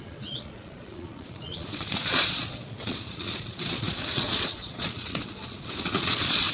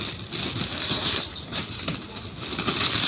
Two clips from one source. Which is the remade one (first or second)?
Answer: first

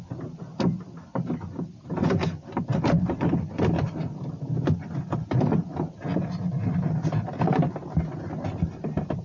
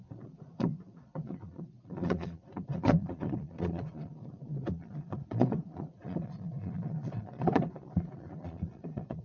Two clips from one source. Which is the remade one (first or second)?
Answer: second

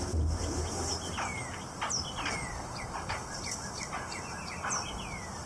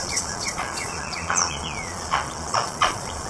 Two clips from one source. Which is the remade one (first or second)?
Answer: second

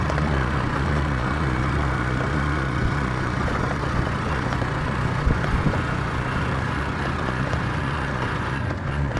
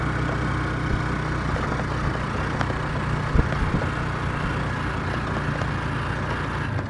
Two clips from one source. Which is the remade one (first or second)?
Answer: first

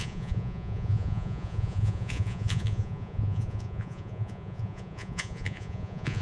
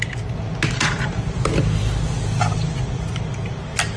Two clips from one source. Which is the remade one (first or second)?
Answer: first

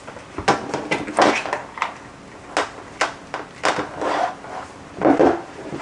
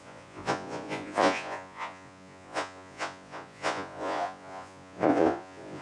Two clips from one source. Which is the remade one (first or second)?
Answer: second